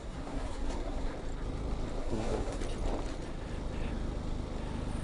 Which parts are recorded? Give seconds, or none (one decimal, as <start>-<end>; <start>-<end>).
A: 1.1-2.0; 2.6-5.0